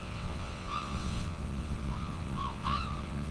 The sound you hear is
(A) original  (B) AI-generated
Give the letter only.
B